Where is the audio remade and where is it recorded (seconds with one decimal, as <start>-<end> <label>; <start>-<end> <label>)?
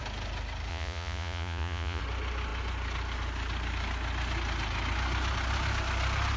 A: 0.0-0.7 recorded; 0.7-2.0 remade; 2.0-6.4 recorded